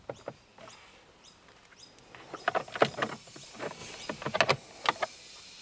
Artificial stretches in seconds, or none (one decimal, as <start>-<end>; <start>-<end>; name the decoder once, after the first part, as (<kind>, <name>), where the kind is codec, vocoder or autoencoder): none